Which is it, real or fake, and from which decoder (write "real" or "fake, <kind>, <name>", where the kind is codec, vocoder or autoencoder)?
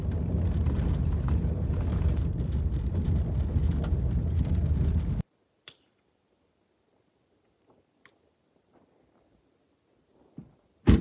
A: real